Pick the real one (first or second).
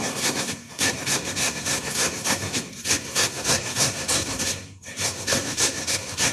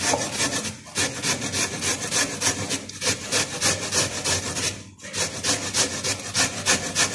second